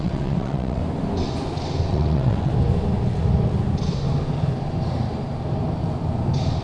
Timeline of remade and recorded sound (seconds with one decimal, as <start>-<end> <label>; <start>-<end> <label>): 0.0-0.8 remade; 0.8-1.9 recorded; 1.9-2.5 remade; 2.5-6.6 recorded

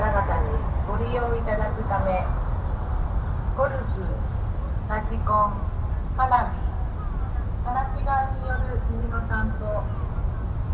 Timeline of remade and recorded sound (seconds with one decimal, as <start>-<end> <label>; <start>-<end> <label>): 0.0-10.7 recorded

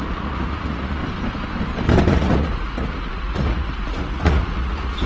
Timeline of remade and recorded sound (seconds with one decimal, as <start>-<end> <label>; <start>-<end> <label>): 0.0-1.0 remade; 1.0-2.1 recorded; 2.1-5.1 remade

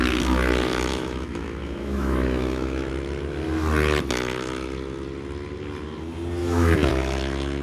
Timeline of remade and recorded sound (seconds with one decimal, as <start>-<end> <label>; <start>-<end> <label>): 0.0-0.9 recorded; 0.9-2.9 remade; 2.9-6.4 recorded; 6.4-6.9 remade; 6.9-7.6 recorded

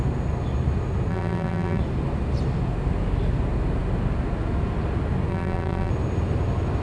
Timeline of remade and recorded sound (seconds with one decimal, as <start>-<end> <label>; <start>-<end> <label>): 0.0-1.1 recorded; 1.1-1.8 remade; 1.8-5.3 recorded; 5.3-5.9 remade; 5.9-6.8 recorded